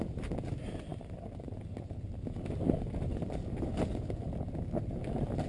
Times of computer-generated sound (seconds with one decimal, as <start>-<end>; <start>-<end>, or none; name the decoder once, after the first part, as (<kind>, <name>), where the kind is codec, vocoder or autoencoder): none